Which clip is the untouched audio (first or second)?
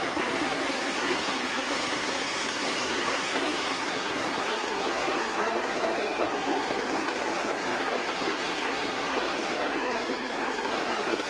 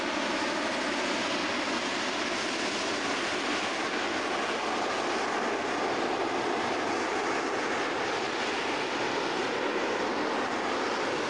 second